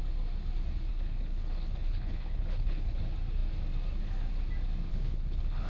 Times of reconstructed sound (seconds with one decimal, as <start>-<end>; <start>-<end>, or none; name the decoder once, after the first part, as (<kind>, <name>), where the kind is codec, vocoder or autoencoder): 0.9-3.0 (codec, HILCodec); 4.9-5.7